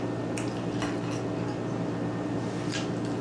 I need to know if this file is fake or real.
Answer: real